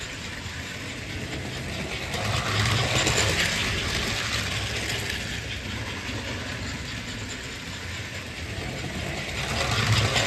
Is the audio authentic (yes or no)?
yes